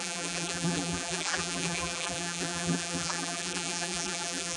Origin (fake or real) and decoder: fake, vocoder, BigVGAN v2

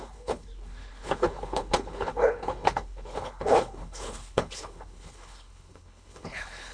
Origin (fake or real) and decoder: fake, codec, HILCodec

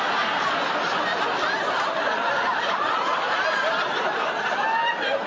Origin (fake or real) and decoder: real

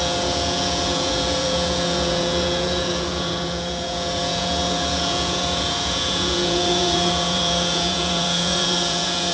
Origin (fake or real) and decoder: fake, vocoder, Vocos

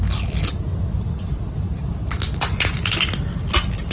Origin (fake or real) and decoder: real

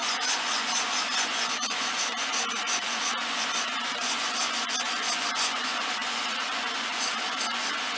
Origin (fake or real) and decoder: fake, vocoder, Vocos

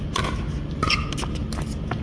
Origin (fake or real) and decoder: real